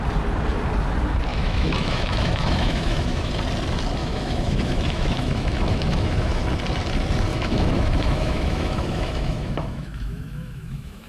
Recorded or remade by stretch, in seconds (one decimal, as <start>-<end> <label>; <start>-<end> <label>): 0.0-1.3 recorded; 1.3-3.3 remade; 3.3-4.0 recorded; 4.0-6.4 remade; 6.4-7.3 recorded; 7.3-11.1 remade